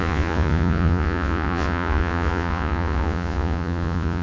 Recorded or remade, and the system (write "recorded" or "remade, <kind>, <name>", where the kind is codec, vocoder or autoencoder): remade, vocoder, Vocos